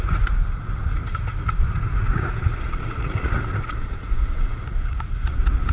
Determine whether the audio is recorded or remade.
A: remade